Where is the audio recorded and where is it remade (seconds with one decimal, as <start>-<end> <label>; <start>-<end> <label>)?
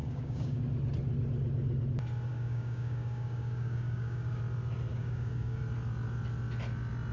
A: 0.0-0.6 remade; 0.6-2.3 recorded; 2.3-4.4 remade; 4.4-4.9 recorded; 4.9-5.6 remade; 5.6-7.1 recorded